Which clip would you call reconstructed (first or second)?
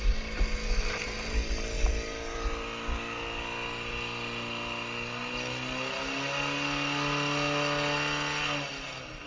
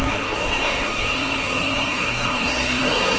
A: second